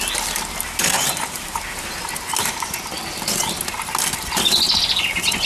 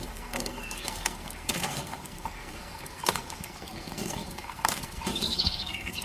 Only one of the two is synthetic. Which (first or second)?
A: second